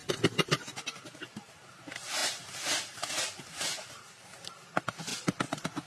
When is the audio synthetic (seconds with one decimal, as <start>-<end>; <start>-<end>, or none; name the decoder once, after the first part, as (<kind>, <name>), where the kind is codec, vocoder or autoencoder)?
1.2-2.2 (vocoder, BigVGAN v2); 4.4-5.9